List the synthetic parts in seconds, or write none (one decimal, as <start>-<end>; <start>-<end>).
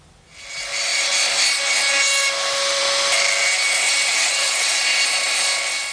4.0-5.0